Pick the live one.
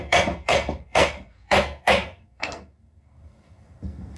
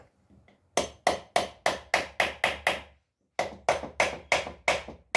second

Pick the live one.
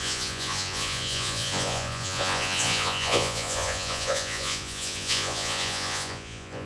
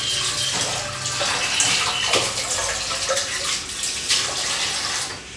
second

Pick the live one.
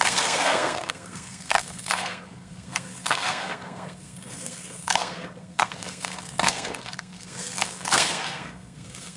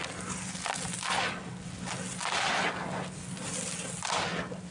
second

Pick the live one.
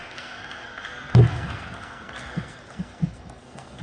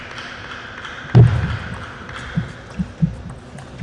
second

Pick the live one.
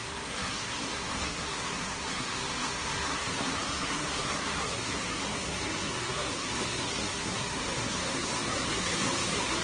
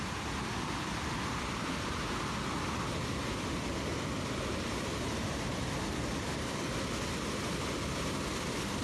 second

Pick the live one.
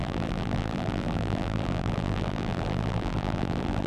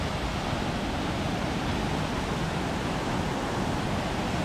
second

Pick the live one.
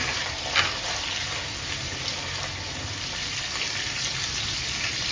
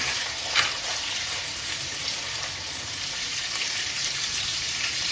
first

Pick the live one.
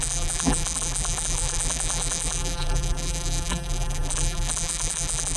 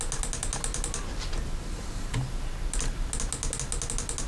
second